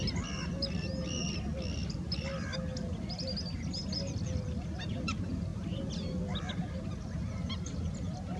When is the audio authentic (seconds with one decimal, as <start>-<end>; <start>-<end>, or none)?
none